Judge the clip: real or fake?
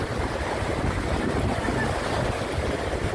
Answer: real